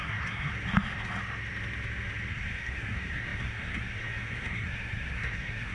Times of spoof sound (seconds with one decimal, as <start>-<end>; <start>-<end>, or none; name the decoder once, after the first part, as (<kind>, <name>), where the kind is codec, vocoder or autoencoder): 0.0-0.5 (codec, SNAC); 2.3-5.7